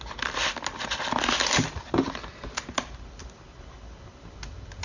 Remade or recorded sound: recorded